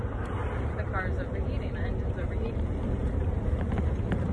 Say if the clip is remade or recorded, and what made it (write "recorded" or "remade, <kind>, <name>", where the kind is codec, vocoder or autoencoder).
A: remade, vocoder, BigVGAN v2